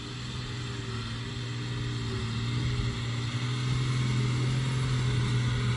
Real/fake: real